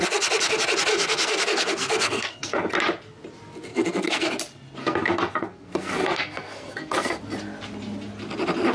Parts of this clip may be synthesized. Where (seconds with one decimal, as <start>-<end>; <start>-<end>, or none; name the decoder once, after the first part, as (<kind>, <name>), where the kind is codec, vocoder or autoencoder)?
0.9-2.7 (codec, SNAC); 3.7-4.3; 4.8-7.2